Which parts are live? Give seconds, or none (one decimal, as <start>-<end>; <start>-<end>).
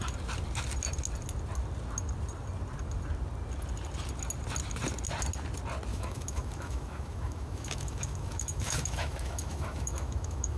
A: 0.0-5.9